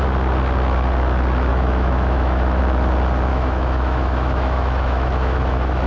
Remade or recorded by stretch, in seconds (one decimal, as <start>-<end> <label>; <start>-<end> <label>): 0.0-1.5 recorded; 1.5-2.6 remade; 2.6-3.3 recorded; 3.3-5.9 remade